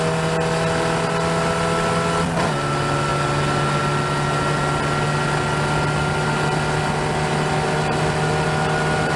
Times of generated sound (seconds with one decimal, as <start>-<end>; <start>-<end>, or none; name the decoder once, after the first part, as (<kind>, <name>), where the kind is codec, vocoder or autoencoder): none